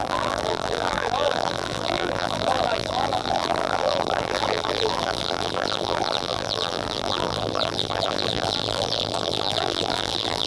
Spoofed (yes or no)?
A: yes